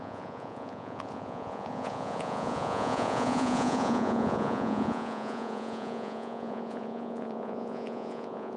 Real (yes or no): no